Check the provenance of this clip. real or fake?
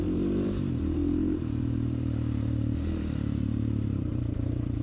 fake